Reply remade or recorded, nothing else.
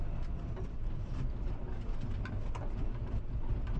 recorded